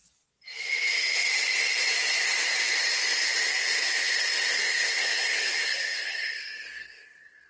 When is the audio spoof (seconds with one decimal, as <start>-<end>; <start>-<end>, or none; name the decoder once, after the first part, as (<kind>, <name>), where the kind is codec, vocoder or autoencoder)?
4.5-7.5 (codec, SNAC)